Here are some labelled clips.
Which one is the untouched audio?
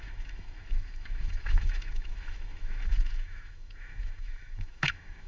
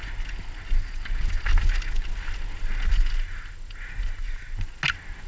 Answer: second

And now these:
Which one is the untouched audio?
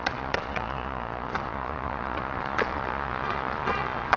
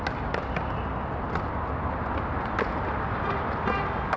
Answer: second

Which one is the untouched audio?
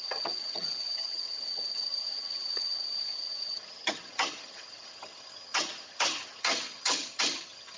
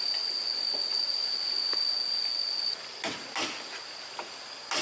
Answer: second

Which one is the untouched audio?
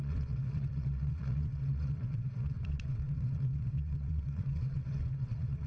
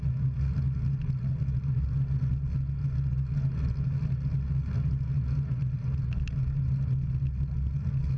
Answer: second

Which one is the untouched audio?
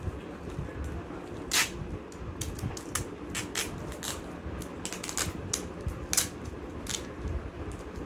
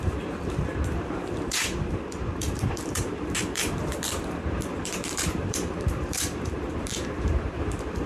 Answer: first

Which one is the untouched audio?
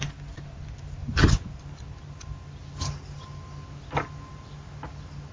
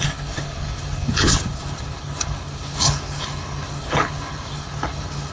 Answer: first